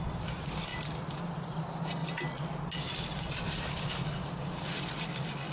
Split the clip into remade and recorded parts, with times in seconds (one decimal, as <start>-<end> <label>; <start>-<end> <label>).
0.0-5.5 recorded